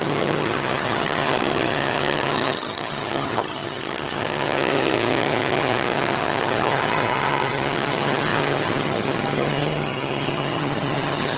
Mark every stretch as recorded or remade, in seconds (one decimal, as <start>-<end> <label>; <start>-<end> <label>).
0.0-11.4 remade